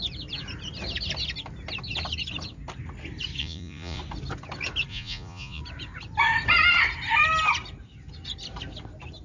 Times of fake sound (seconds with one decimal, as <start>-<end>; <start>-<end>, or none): 3.4-4.0; 4.9-5.6